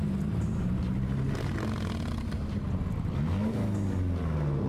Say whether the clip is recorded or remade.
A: recorded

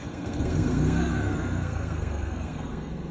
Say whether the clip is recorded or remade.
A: remade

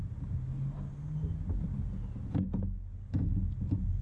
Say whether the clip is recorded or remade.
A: recorded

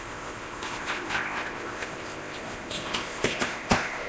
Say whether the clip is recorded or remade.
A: remade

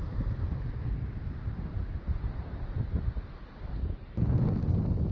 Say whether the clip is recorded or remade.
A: recorded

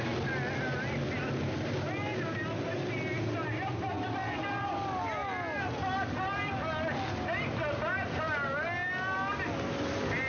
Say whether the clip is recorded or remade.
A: recorded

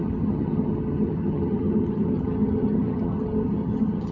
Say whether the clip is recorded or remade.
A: remade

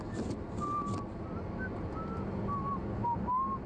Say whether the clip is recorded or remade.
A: recorded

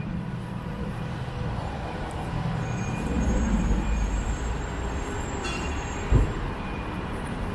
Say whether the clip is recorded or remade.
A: remade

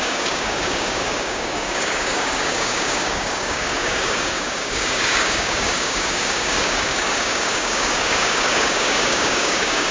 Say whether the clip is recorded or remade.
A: remade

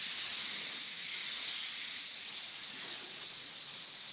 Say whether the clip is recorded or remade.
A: remade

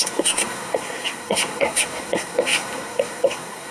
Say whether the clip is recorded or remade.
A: remade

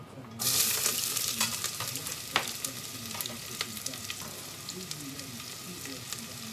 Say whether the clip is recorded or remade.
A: recorded